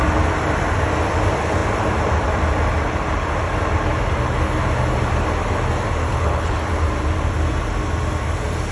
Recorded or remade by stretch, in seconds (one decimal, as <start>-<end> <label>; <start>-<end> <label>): 0.0-6.0 recorded; 6.0-6.6 remade; 6.6-8.7 recorded